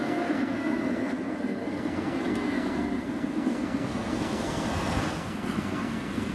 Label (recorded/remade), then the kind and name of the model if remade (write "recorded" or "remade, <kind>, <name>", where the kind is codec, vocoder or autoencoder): remade, codec, SNAC